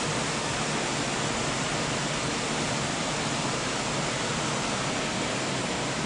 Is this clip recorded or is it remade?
recorded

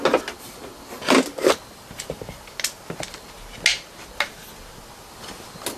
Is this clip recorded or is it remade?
recorded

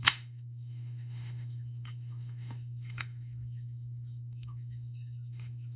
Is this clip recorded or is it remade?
remade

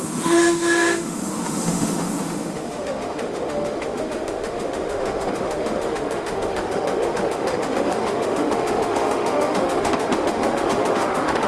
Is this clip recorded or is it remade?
remade